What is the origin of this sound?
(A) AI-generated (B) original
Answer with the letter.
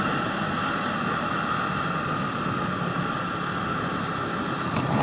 B